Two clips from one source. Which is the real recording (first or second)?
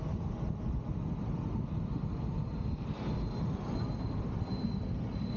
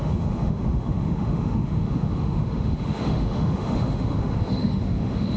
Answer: first